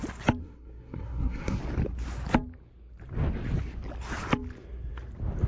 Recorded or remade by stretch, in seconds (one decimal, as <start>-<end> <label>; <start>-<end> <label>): 0.0-0.4 recorded; 0.4-1.6 remade; 1.6-5.5 recorded

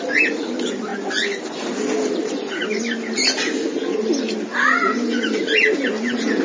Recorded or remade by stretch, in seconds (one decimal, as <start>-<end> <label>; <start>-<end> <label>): 0.0-6.4 recorded